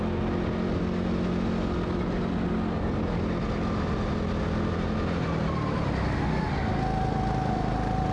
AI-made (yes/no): no